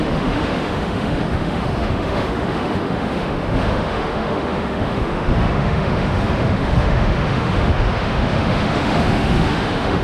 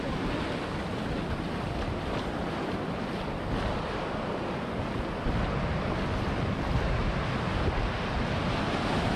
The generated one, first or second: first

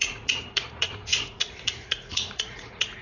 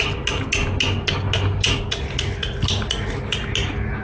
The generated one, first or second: first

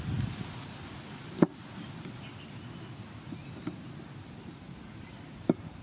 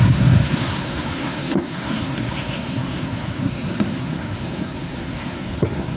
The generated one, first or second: second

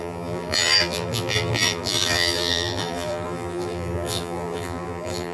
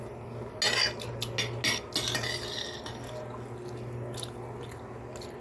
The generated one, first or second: first